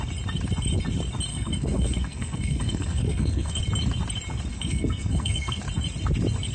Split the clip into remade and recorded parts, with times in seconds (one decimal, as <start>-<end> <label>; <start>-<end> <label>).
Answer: 0.0-1.3 recorded; 1.3-3.6 remade; 3.6-4.5 recorded; 4.5-5.6 remade; 5.6-6.5 recorded